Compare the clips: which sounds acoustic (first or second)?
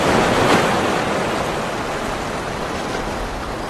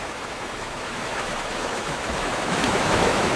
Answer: first